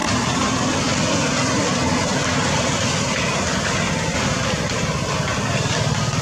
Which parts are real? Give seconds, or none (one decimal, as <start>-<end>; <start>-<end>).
0.0-6.2